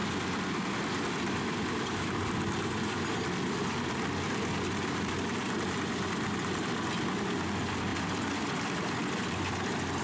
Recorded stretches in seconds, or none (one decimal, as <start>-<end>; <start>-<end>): 0.0-0.7